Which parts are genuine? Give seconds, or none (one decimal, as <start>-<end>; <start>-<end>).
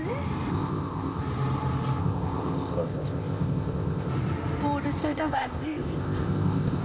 0.0-0.5; 1.2-2.0; 4.1-5.0